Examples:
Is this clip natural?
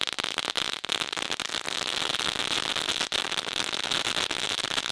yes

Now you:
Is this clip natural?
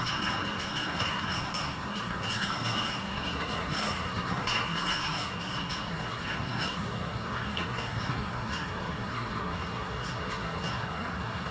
no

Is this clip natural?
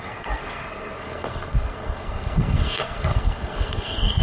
no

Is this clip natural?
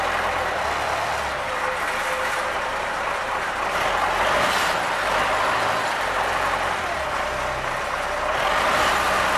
yes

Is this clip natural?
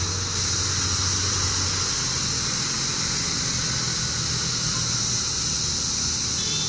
yes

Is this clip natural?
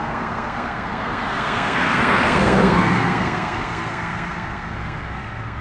no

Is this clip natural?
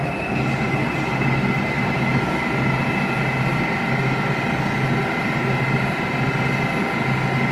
yes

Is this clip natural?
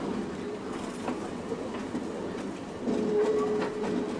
yes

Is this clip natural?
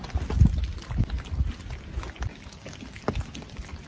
yes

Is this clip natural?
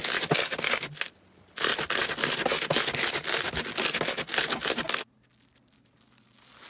yes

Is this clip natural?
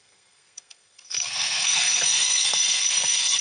no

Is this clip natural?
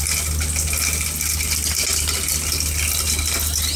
yes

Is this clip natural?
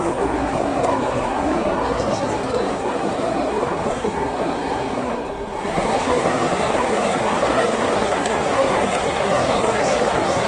no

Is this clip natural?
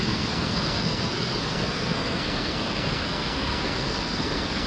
no